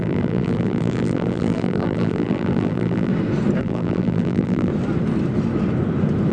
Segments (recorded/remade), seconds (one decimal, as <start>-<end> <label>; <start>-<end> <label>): 0.0-3.1 remade; 3.1-3.6 recorded; 3.6-4.7 remade; 4.7-6.3 recorded